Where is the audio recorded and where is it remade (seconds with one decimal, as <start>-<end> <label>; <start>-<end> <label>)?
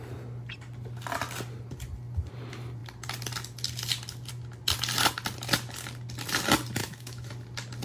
0.0-6.8 recorded; 6.8-7.3 remade; 7.3-7.8 recorded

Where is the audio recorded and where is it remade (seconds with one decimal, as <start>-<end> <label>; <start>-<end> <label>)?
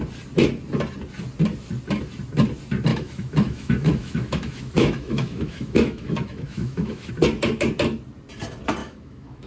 0.0-2.9 recorded; 2.9-7.1 remade; 7.1-8.8 recorded; 8.8-9.5 remade